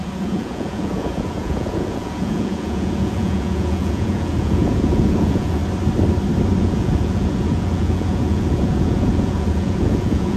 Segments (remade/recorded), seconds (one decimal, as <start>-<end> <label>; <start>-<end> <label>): 0.0-5.6 remade; 5.6-6.6 recorded; 6.6-10.4 remade